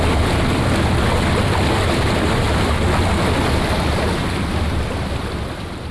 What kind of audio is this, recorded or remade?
recorded